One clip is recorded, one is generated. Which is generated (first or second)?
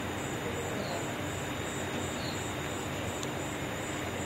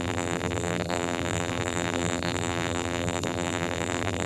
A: second